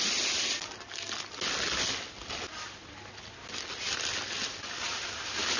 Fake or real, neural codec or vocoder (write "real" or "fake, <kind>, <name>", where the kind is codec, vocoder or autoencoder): real